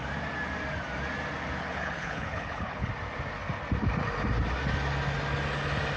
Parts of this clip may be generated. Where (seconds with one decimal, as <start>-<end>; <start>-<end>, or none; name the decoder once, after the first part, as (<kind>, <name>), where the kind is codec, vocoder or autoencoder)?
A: 1.6-2.9 (codec, HILCodec)